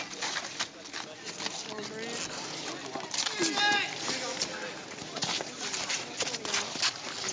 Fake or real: real